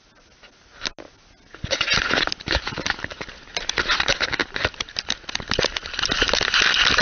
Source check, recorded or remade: recorded